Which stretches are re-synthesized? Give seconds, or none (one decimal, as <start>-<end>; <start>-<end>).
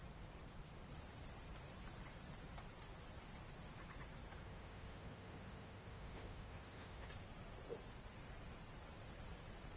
4.4-7.1